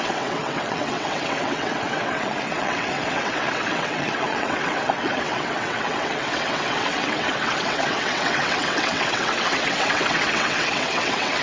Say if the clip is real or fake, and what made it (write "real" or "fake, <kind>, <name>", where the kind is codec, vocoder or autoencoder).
fake, vocoder, WaveNeXt